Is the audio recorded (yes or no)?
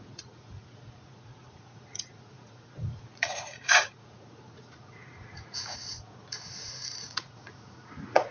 no